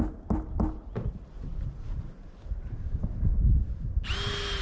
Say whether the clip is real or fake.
real